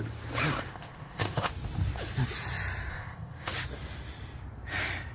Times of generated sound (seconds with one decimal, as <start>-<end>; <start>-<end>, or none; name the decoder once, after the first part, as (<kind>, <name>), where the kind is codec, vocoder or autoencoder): 0.7-1.5 (codec, ZipCodec); 2.9-3.5